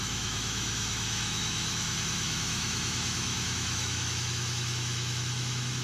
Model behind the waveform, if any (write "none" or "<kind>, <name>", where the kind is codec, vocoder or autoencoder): autoencoder, DAC-VAE